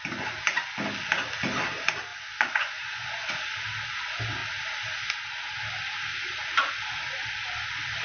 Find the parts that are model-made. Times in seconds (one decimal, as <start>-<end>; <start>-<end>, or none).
2.1-3.3